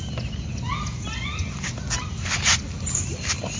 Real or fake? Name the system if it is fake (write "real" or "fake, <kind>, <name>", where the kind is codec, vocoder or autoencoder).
real